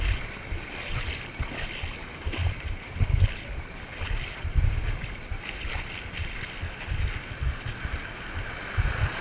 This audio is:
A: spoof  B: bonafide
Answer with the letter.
B